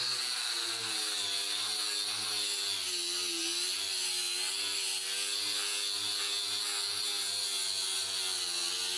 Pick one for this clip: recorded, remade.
recorded